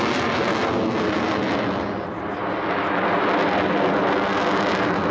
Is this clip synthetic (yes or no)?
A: no